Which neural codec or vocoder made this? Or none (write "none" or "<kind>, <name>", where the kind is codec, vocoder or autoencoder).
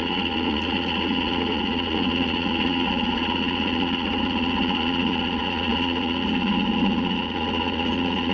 vocoder, Vocos